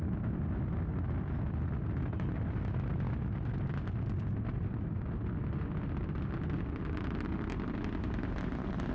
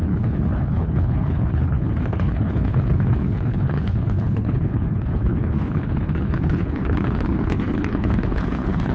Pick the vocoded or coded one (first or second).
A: second